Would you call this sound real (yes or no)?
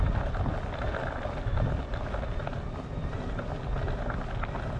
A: yes